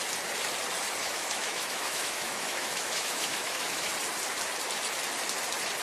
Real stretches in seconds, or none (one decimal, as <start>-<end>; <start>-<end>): 0.0-1.0; 3.9-5.8